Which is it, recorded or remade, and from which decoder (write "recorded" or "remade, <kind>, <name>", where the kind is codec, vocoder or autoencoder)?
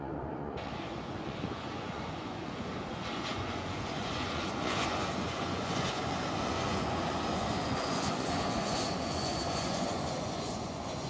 remade, vocoder, Vocos